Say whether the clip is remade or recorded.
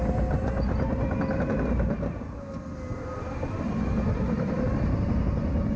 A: recorded